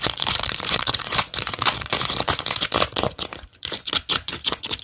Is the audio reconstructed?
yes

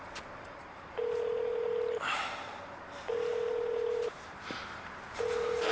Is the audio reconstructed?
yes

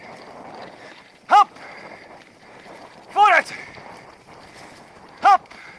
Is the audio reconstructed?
no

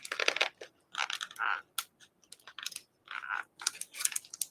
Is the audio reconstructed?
no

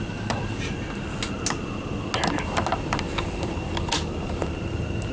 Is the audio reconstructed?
no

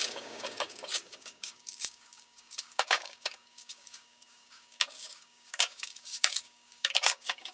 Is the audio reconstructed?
yes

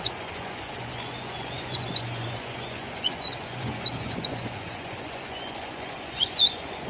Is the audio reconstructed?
yes